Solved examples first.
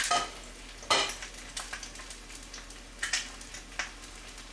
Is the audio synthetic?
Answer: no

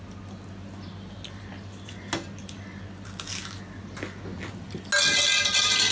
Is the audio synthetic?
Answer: no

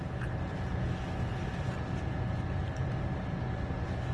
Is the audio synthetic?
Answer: no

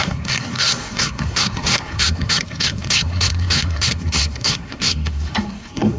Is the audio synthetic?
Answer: yes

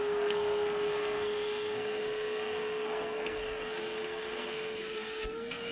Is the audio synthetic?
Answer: yes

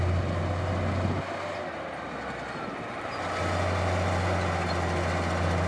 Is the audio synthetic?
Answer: no